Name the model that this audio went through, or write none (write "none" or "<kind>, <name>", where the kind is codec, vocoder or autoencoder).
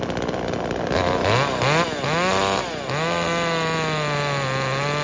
none